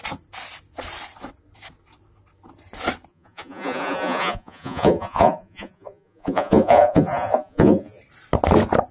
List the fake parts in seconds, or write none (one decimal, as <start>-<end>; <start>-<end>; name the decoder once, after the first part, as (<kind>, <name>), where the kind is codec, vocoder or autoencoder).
3.1-8.0 (vocoder, Vocos)